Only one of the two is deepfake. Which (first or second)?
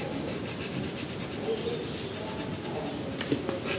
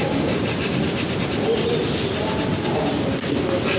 second